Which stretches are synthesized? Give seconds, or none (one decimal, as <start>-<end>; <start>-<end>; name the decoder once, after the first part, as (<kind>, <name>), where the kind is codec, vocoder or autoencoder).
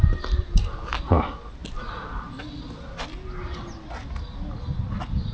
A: none